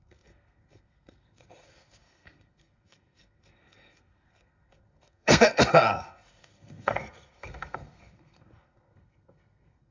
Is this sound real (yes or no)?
no